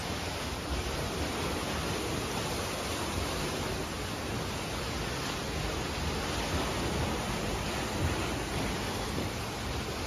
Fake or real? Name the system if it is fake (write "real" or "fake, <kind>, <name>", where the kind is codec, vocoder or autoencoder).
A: real